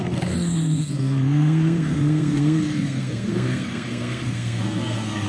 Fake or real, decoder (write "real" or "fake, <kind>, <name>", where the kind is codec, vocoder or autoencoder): fake, codec, SNAC